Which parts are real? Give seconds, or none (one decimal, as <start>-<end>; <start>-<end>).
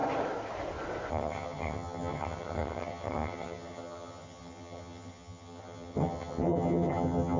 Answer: 0.0-1.1